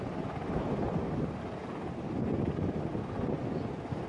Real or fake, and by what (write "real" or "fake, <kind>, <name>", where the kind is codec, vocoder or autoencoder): real